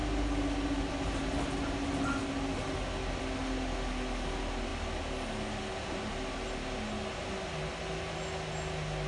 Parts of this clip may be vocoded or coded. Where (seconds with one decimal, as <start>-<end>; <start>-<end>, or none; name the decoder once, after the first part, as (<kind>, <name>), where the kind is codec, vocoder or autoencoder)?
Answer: none